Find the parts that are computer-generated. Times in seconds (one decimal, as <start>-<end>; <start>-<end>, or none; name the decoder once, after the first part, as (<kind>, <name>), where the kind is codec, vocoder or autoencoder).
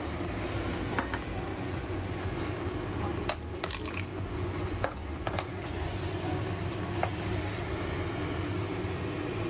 1.5-2.4 (vocoder, Vocos); 4.1-6.4